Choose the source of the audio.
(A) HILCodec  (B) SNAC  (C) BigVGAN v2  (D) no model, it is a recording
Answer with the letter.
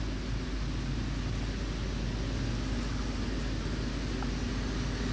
D